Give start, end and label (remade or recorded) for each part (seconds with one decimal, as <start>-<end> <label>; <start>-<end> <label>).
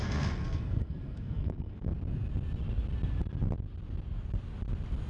0.0-1.9 remade; 1.9-5.1 recorded